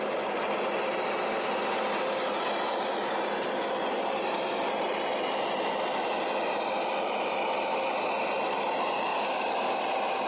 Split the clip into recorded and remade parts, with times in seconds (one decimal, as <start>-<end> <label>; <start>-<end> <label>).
0.0-9.1 recorded; 9.1-9.8 remade; 9.8-10.3 recorded